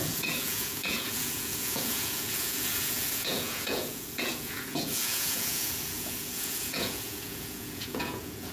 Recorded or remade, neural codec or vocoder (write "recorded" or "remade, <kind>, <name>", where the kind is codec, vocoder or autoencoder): remade, vocoder, Vocos